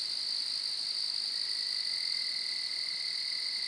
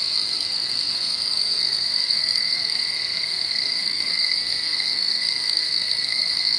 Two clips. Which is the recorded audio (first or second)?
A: first